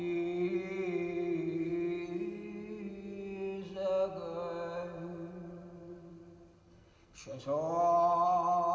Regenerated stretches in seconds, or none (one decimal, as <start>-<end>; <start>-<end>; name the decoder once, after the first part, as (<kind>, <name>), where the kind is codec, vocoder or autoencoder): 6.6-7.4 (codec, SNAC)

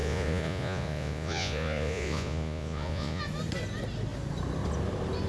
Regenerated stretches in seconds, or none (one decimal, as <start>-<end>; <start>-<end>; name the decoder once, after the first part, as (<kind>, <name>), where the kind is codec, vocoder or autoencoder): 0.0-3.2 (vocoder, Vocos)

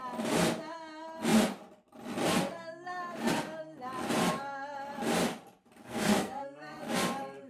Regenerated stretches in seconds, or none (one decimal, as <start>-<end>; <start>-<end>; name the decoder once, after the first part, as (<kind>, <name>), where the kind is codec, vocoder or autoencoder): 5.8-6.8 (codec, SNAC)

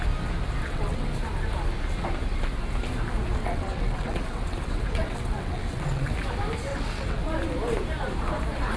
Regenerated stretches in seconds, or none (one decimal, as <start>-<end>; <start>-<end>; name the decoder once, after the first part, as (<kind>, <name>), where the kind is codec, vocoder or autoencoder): 0.6-1.1 (vocoder, WaveNeXt); 3.4-6.1; 6.7-7.2